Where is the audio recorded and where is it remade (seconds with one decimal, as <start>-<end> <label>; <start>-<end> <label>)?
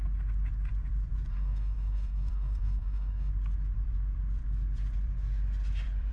0.0-1.3 recorded; 1.3-3.3 remade; 3.3-6.1 recorded